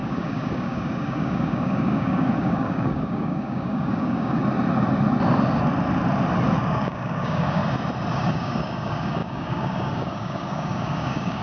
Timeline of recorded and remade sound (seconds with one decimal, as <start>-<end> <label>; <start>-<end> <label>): 0.0-4.4 remade; 4.4-6.6 recorded; 6.6-7.6 remade; 7.6-8.1 recorded; 8.1-11.4 remade

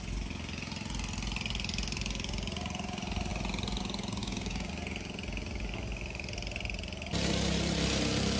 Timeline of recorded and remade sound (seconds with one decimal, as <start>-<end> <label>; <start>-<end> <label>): 0.0-4.2 recorded; 4.2-4.7 remade; 4.7-8.4 recorded

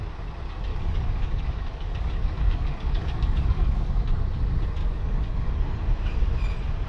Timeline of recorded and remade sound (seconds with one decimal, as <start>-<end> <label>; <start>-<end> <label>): 0.0-0.7 recorded; 0.7-4.2 remade; 4.2-4.8 recorded; 4.8-5.5 remade; 5.5-6.9 recorded